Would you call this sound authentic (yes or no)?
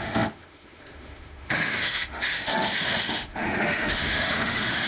no